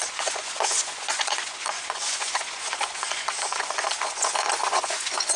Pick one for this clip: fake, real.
fake